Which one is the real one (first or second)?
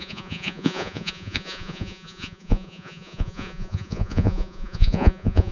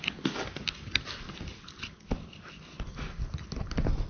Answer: second